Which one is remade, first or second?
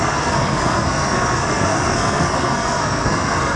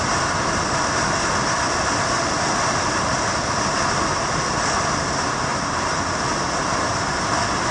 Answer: first